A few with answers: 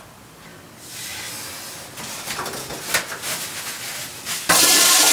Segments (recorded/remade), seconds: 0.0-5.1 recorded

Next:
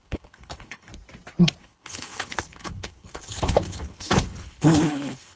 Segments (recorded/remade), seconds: 0.0-0.9 remade; 0.9-1.6 recorded; 1.6-5.4 remade